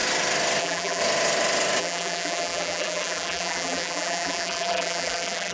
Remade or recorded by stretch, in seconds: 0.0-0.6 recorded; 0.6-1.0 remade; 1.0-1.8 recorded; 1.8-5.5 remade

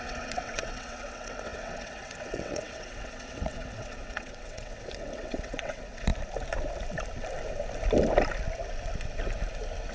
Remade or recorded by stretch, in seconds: 0.0-6.1 remade; 6.1-9.9 recorded

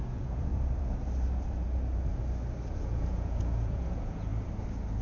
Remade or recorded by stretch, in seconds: 0.0-0.5 remade; 0.5-2.7 recorded; 2.7-4.3 remade; 4.3-5.0 recorded

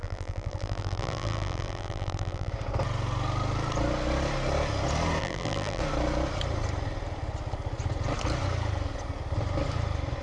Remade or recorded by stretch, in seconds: 0.0-2.5 remade; 2.5-5.2 recorded; 5.2-5.8 remade; 5.8-10.2 recorded

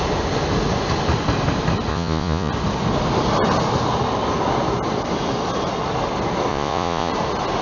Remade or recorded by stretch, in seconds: 0.0-1.9 recorded; 1.9-2.5 remade; 2.5-6.5 recorded; 6.5-7.1 remade; 7.1-7.6 recorded

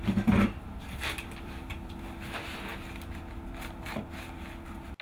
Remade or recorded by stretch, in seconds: 0.0-1.9 remade; 1.9-5.0 recorded

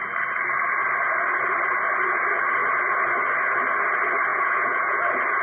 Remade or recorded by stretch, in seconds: 0.0-4.3 recorded; 4.3-5.0 remade; 5.0-5.4 recorded